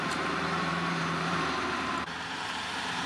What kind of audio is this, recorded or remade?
remade